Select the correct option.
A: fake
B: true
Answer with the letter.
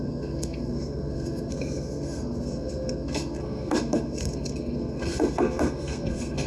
A